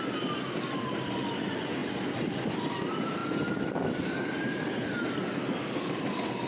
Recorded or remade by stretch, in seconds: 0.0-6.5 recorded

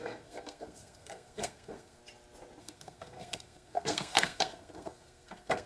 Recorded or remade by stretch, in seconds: 0.0-2.0 remade; 2.0-2.6 recorded; 2.6-5.7 remade